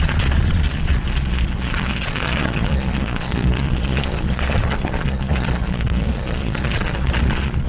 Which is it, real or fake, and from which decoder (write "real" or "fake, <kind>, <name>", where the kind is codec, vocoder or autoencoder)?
fake, vocoder, Vocos